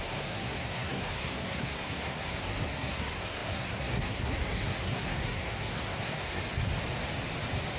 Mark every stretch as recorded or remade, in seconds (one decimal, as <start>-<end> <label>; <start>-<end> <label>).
0.0-6.4 remade; 6.4-7.8 recorded